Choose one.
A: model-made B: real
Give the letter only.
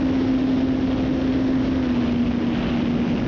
B